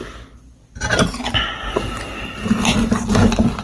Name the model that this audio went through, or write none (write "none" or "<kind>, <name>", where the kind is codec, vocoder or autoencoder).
none